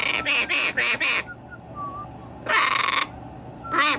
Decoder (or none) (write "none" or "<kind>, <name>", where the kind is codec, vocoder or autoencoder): none